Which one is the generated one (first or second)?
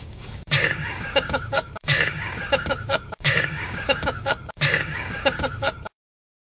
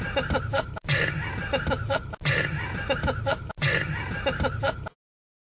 first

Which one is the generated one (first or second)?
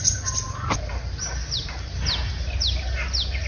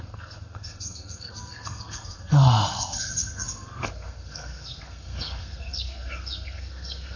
second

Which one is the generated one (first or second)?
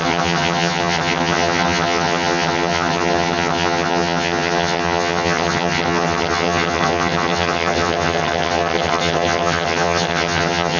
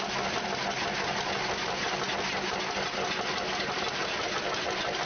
first